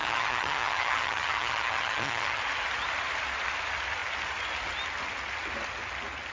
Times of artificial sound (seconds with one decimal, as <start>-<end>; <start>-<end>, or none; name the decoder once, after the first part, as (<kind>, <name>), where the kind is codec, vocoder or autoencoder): 0.0-2.4 (vocoder, HiFi-GAN)

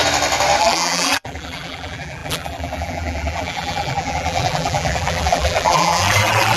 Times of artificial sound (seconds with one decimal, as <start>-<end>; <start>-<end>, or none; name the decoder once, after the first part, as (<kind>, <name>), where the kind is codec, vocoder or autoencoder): 0.6-6.6 (vocoder, BigVGAN v2)

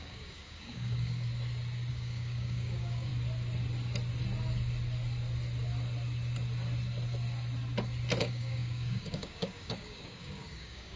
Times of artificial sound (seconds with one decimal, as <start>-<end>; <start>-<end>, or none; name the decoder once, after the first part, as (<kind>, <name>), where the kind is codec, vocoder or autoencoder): 0.0-1.3 (codec, DAC); 1.9-3.1; 8.2-11.0

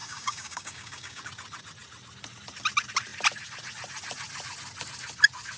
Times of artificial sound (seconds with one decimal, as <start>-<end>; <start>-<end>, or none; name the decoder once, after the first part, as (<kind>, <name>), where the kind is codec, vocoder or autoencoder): 0.0-1.2 (codec, DAC)

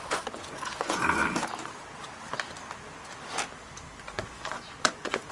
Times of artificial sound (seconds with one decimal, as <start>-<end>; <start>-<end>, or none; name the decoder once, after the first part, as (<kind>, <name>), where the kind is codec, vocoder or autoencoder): 0.0-1.2 (vocoder, Vocos); 4.0-5.3

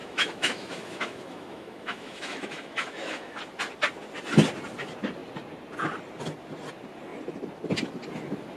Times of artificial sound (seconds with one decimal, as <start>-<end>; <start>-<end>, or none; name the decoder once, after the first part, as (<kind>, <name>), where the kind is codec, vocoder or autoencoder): 0.0-3.4 (autoencoder, DAC-VAE)